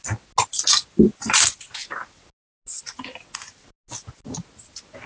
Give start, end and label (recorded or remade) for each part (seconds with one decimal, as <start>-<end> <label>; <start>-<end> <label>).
0.0-5.1 recorded